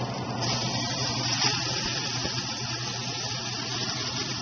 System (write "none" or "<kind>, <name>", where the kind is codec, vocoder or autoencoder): none